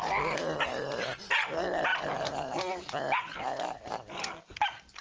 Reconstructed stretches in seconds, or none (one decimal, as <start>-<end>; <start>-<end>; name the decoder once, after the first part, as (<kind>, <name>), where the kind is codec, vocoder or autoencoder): none